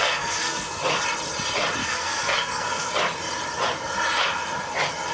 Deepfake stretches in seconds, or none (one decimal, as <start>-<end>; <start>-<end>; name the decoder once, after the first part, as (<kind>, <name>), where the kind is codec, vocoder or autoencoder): 0.0-0.8 (codec, SNAC); 1.8-2.9